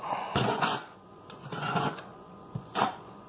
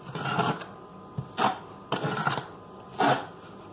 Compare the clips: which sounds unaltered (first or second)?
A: second